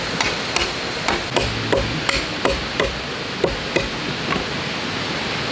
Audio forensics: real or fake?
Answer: real